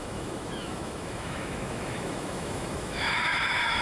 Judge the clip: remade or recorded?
remade